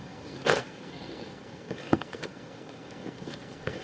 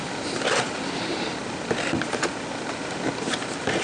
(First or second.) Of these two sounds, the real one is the second